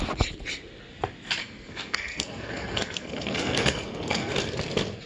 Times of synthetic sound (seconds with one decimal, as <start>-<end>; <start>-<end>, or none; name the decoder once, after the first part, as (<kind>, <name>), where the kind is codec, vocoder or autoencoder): 1.4-4.3 (codec, SNAC)